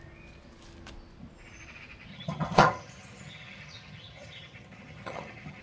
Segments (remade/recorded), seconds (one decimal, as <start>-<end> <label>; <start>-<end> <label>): 0.0-2.1 recorded; 2.1-5.6 remade